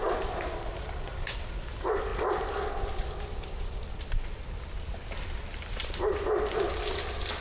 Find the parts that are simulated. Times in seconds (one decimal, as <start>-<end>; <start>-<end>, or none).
0.0-7.4